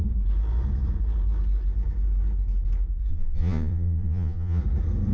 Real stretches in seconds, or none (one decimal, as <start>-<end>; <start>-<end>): 0.0-3.1; 4.6-5.1